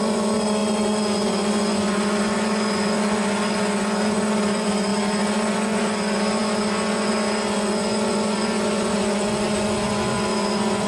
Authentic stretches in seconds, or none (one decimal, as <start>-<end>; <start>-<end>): none